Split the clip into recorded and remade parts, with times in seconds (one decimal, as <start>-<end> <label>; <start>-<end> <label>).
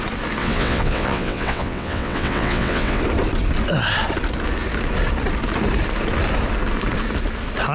0.0-0.4 recorded; 0.4-3.0 remade; 3.0-7.7 recorded